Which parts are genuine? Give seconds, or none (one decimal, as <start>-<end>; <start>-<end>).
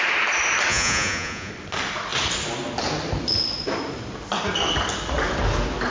0.0-0.7; 1.5-5.9